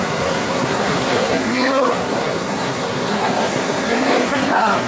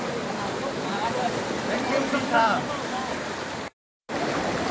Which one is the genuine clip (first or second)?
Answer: second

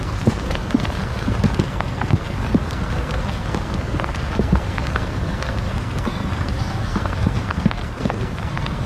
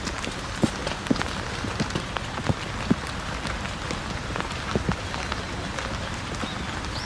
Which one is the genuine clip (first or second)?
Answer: second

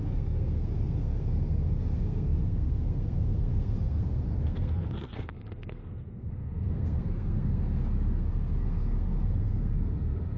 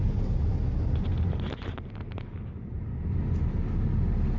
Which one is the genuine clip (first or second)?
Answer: second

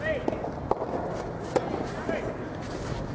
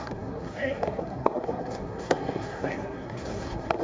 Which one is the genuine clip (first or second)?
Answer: first